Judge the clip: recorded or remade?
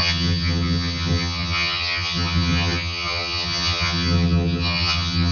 remade